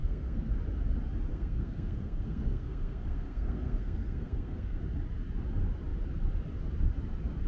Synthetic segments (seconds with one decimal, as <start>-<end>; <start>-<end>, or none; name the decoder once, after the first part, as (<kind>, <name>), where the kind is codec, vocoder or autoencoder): 0.0-0.5 (codec, SNAC); 1.3-4.8